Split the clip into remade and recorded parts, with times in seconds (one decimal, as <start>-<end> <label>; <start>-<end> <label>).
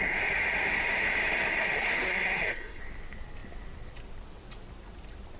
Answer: 0.0-1.6 recorded; 1.6-2.8 remade; 2.8-5.4 recorded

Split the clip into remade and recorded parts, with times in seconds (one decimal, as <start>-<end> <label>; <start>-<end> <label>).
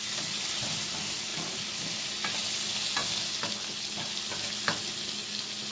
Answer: 0.0-5.7 recorded